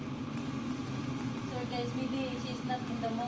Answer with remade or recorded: recorded